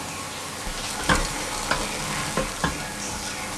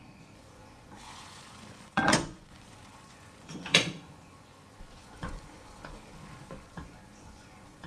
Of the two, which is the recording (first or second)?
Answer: first